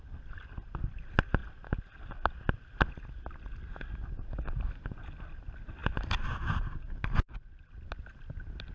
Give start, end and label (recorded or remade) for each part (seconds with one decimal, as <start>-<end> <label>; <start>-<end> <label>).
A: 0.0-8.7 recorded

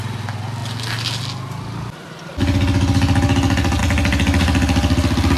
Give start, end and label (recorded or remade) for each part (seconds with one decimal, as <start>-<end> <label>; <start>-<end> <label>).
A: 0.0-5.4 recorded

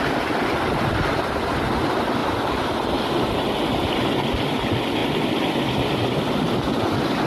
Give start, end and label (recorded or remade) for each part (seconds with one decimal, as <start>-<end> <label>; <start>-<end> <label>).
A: 0.0-7.3 recorded

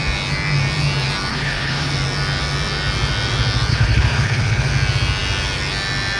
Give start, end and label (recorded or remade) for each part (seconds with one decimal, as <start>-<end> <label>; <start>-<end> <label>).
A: 0.0-1.3 recorded; 1.3-1.9 remade; 1.9-3.7 recorded; 3.7-4.7 remade; 4.7-6.2 recorded